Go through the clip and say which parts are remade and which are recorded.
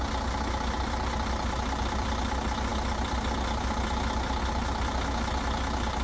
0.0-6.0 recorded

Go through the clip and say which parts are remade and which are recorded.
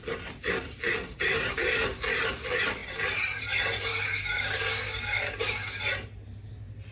0.0-3.9 recorded; 3.9-5.8 remade; 5.8-6.9 recorded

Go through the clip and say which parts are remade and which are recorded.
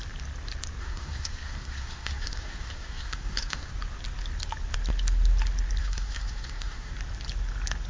0.0-0.8 recorded; 0.8-3.7 remade; 3.7-5.8 recorded; 5.8-6.9 remade; 6.9-7.9 recorded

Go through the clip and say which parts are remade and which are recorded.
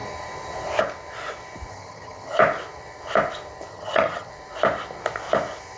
0.0-1.7 recorded; 1.7-2.4 remade; 2.4-3.7 recorded; 3.7-4.3 remade; 4.3-5.8 recorded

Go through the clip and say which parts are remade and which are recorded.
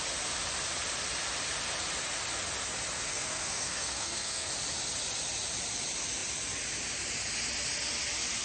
0.0-3.0 recorded; 3.0-4.5 remade; 4.5-8.4 recorded